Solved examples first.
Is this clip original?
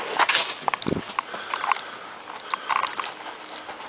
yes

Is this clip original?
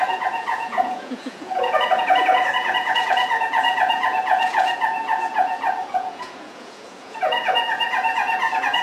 no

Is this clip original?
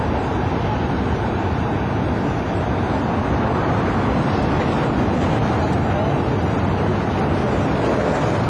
yes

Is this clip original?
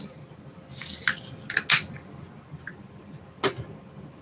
yes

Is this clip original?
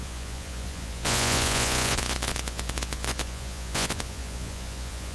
no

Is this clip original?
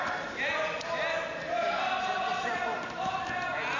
yes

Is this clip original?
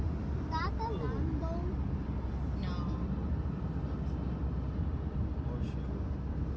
yes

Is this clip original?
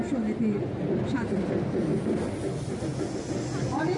yes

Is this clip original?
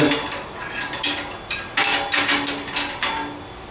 yes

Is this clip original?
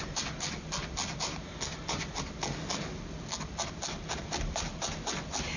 yes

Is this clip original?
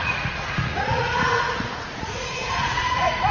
no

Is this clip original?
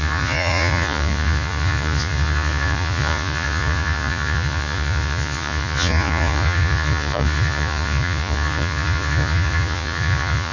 no